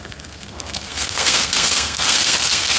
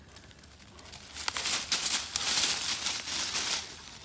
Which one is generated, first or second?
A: first